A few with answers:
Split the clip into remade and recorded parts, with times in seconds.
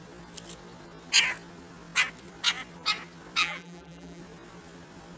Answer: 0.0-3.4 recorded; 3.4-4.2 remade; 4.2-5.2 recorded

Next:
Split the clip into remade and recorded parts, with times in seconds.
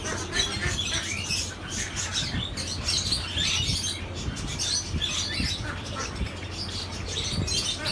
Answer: 0.0-7.9 recorded